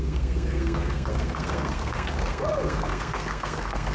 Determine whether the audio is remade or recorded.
remade